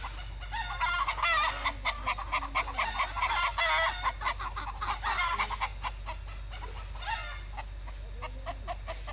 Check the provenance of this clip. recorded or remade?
recorded